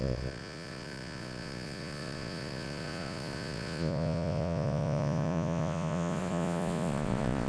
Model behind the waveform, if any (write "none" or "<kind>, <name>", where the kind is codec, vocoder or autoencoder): vocoder, Vocos